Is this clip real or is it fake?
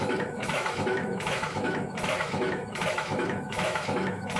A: fake